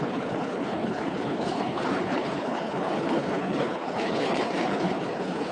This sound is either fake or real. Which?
fake